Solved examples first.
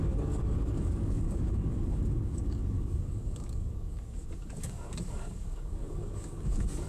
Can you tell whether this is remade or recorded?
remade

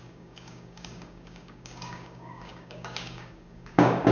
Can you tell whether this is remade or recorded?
remade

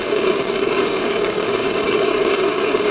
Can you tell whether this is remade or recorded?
remade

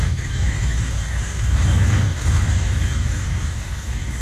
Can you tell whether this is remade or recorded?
remade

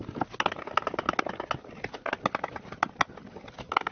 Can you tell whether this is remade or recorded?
recorded